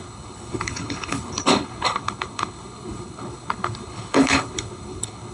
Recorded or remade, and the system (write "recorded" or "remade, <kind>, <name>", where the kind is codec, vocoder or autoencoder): remade, codec, HILCodec